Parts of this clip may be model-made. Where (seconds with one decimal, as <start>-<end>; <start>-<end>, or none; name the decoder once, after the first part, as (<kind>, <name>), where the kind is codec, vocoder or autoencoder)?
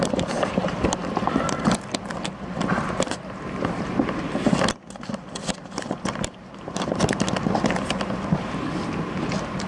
none